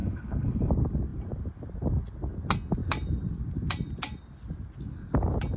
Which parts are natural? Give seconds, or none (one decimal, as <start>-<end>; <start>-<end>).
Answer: 0.7-5.6